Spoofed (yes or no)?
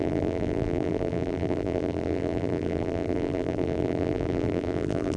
yes